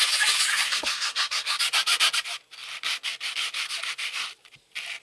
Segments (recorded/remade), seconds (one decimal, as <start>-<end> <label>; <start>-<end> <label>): 0.0-0.5 recorded; 0.5-1.6 remade; 1.6-5.0 recorded